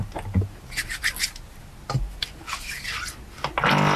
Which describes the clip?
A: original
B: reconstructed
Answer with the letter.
A